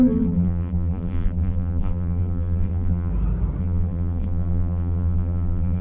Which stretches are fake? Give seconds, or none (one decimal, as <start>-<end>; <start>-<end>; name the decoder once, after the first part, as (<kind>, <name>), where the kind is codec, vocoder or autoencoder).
0.0-3.1 (vocoder, BigVGAN v2); 3.6-5.8